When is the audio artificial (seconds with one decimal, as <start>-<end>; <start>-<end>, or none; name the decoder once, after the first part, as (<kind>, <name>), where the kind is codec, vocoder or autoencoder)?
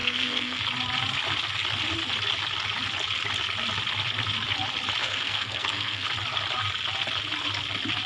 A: 0.0-0.6 (codec, SNAC); 5.0-6.1